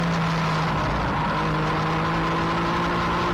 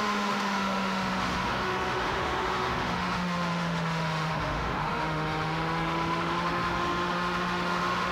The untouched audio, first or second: first